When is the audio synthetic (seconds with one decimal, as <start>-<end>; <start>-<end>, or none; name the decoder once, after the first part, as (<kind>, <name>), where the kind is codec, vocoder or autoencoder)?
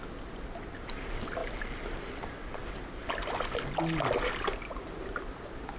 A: none